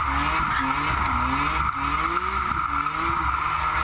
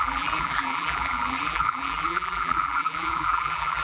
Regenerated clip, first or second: second